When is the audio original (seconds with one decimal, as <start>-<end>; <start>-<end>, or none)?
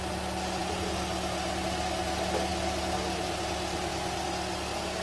0.0-5.0